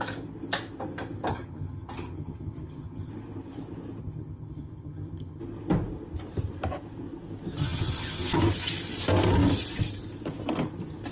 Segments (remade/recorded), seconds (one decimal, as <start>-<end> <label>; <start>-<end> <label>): 0.0-1.3 recorded; 1.3-3.1 remade; 3.1-4.0 recorded; 4.0-5.4 remade; 5.4-7.6 recorded; 7.6-8.4 remade; 8.4-11.1 recorded